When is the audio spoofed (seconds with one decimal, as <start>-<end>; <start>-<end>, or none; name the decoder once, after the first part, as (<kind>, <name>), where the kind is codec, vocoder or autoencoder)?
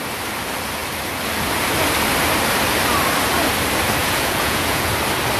4.0-4.9 (vocoder, Vocos)